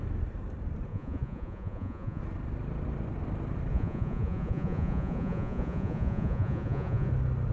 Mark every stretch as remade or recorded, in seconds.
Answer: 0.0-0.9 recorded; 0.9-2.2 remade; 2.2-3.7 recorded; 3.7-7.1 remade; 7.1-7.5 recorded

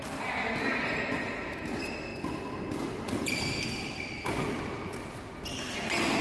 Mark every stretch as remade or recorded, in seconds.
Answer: 0.0-6.2 recorded

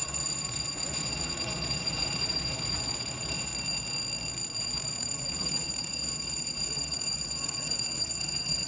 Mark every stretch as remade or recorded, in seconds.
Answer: 0.0-3.5 remade; 3.5-4.6 recorded; 4.6-8.7 remade

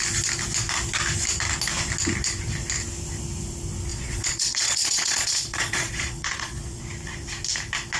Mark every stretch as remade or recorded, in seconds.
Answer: 0.0-3.9 recorded; 3.9-6.8 remade; 6.8-8.0 recorded

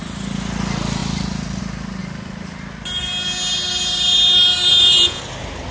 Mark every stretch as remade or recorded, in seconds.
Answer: 0.0-4.7 recorded; 4.7-5.2 remade; 5.2-5.7 recorded

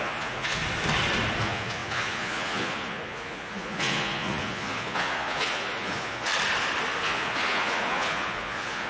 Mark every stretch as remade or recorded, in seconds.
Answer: 0.0-0.6 remade; 0.6-1.4 recorded; 1.4-6.3 remade; 6.3-7.0 recorded; 7.0-8.9 remade

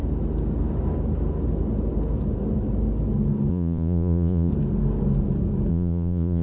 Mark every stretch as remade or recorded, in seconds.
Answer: 0.0-3.5 recorded; 3.5-4.5 remade; 4.5-5.7 recorded; 5.7-6.4 remade

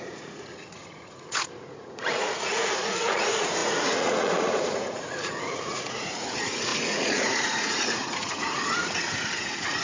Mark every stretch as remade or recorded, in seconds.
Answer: 0.0-9.8 remade